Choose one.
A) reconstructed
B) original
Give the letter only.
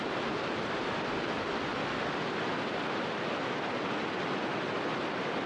B